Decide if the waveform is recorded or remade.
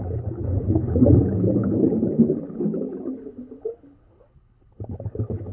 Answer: remade